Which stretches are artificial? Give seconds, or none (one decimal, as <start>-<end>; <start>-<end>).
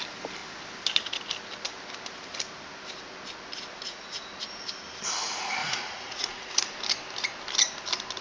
3.7-4.3; 5.6-6.7